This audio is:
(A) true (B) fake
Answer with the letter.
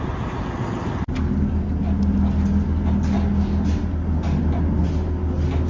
A